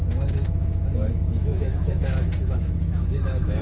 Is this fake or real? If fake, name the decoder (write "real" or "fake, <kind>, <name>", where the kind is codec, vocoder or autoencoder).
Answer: fake, autoencoder, DAC-VAE